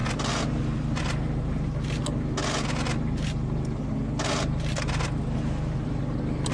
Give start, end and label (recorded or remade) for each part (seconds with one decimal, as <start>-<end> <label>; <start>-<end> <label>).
0.0-6.5 recorded

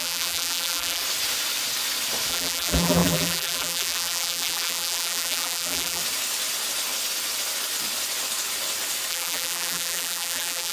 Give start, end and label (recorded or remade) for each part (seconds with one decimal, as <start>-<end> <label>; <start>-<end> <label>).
0.0-1.0 remade; 1.0-2.3 recorded; 2.3-6.0 remade; 6.0-9.1 recorded; 9.1-10.7 remade

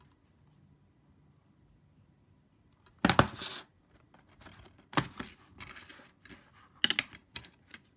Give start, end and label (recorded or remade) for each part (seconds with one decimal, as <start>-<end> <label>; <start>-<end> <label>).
0.0-7.2 recorded; 7.2-8.0 remade